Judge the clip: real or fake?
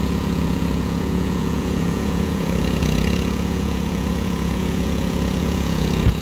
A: fake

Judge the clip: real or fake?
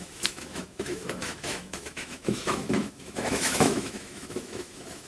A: fake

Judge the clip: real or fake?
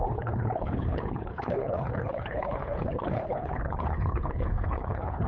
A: fake